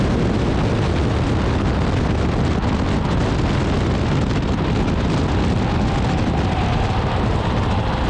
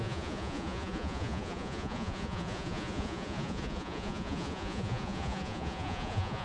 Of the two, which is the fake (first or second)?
second